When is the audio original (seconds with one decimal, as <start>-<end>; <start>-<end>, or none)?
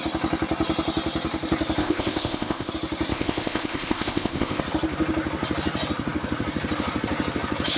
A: 0.0-1.8; 2.7-3.1; 4.6-7.8